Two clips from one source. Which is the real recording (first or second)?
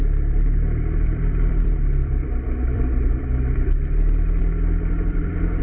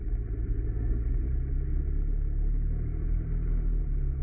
second